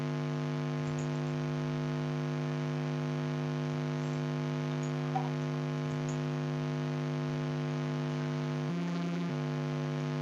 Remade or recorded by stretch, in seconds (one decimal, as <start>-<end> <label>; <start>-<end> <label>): 0.0-8.7 recorded; 8.7-9.3 remade; 9.3-10.2 recorded